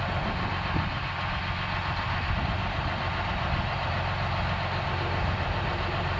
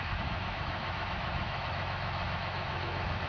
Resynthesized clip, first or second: second